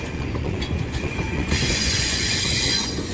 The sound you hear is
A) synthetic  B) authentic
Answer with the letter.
A